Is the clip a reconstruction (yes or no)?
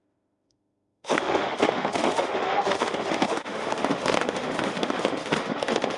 yes